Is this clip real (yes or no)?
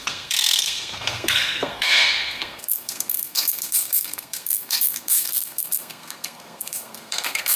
no